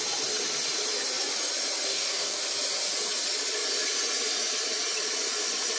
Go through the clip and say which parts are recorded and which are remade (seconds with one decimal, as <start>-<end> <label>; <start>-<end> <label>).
0.0-1.9 recorded; 1.9-2.4 remade; 2.4-5.8 recorded